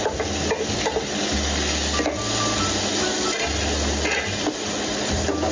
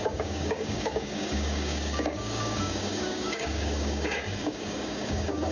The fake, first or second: second